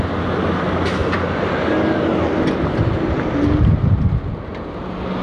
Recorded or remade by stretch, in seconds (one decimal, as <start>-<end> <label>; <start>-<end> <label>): 0.0-5.2 recorded